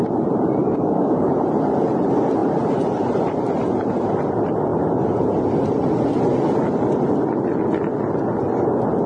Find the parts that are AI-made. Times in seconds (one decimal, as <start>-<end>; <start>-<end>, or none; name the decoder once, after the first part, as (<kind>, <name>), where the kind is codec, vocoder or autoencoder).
0.6-1.3 (codec, DAC)